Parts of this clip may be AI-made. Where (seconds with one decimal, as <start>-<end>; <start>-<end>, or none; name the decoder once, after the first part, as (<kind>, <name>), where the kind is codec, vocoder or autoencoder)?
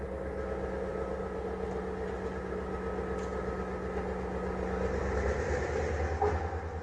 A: none